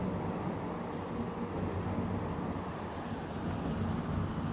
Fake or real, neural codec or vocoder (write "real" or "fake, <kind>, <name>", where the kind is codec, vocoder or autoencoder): real